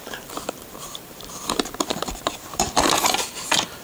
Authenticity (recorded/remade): remade